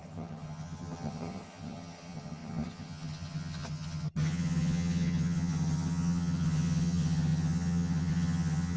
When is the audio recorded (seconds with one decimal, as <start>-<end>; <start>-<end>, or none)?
none